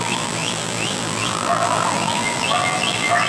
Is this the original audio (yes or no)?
no